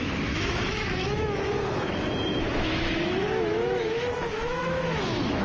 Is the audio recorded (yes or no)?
no